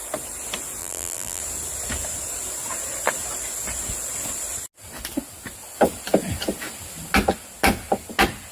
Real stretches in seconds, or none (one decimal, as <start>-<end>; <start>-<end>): 0.0-0.8; 1.4-8.5